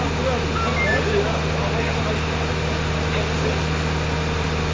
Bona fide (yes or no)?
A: yes